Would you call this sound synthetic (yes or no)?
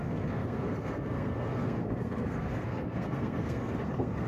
yes